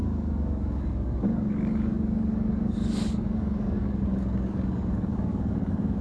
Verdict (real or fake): fake